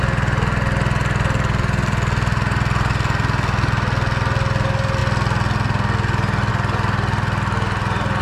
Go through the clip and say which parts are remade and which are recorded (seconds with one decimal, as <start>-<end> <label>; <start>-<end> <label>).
0.0-8.2 recorded